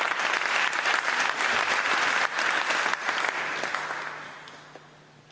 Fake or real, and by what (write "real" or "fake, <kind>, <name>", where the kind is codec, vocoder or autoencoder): real